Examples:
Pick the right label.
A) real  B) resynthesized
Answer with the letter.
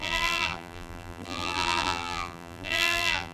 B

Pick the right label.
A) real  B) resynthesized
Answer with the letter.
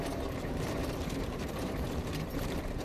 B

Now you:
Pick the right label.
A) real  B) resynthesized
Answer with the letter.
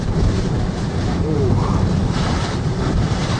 B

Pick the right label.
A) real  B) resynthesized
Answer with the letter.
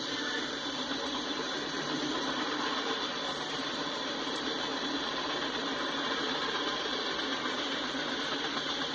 B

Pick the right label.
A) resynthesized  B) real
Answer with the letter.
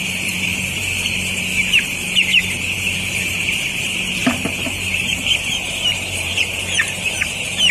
A